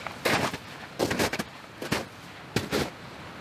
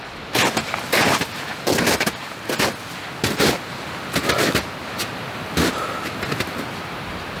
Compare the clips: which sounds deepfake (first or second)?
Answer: first